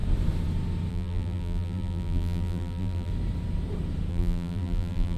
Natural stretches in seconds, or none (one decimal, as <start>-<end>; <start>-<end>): 0.0-0.9; 3.1-4.1